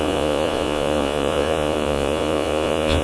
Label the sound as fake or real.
fake